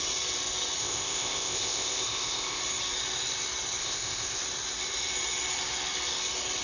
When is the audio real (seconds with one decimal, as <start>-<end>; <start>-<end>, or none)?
0.0-0.8; 2.6-3.8; 4.4-6.6